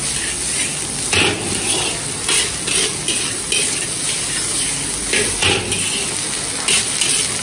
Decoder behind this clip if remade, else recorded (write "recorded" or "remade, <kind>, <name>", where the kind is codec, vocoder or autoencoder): recorded